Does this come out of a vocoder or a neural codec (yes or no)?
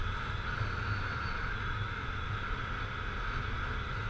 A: no